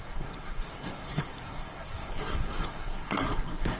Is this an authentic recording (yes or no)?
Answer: no